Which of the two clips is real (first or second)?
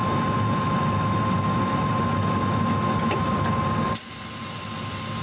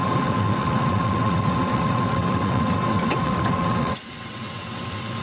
first